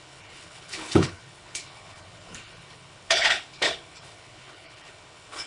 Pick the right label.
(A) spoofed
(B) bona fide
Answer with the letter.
A